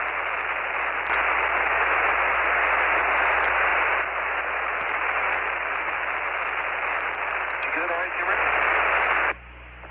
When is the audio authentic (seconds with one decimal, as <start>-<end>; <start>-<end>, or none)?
0.0-3.7; 5.9-9.9